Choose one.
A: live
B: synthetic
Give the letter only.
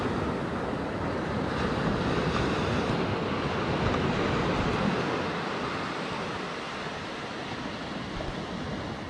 A